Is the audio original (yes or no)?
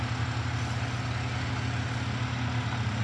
yes